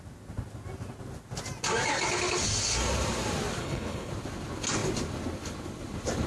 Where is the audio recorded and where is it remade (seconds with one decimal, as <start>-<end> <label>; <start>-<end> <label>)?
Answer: 0.0-3.6 recorded; 3.6-4.1 remade; 4.1-6.3 recorded